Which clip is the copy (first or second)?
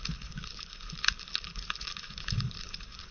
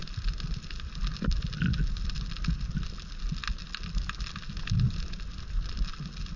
first